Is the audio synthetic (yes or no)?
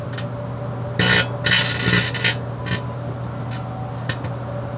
no